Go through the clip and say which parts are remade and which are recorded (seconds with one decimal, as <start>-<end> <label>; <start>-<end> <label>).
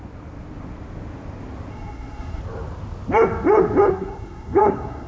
0.0-1.7 recorded; 1.7-2.4 remade; 2.4-3.9 recorded; 3.9-5.1 remade